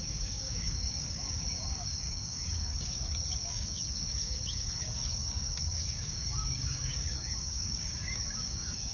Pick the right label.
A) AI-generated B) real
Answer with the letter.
A